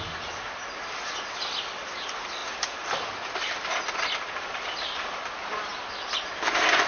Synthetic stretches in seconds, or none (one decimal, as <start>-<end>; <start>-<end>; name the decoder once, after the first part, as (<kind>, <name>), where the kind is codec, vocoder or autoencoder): none